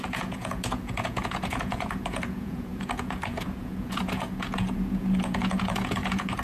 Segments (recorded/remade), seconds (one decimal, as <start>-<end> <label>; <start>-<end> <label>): 0.0-6.4 remade